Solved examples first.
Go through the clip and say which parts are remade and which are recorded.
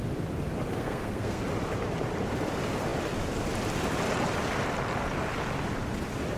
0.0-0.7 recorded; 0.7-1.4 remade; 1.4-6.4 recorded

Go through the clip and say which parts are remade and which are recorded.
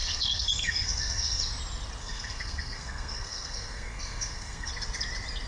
0.0-1.4 remade; 1.4-2.0 recorded; 2.0-4.7 remade; 4.7-5.5 recorded